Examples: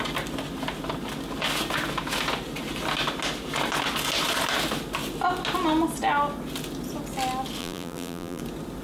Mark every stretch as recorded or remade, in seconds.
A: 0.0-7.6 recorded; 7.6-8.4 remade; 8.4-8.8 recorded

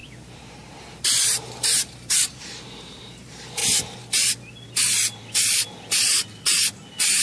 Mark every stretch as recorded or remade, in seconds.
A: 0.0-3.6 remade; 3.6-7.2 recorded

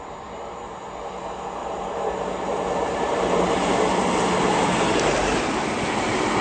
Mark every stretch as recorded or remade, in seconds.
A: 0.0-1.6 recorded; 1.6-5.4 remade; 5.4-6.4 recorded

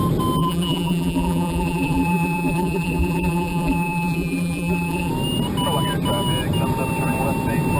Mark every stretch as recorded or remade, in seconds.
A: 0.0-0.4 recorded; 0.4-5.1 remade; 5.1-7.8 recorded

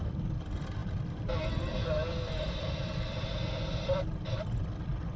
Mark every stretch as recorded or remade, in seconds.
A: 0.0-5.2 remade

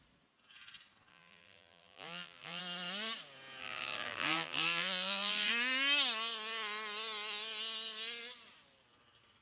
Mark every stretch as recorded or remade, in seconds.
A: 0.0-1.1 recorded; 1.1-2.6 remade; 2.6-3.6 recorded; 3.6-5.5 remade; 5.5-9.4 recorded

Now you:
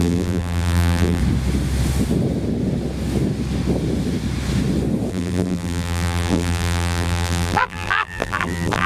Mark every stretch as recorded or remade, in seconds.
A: 0.0-1.2 remade; 1.2-5.1 recorded; 5.1-8.9 remade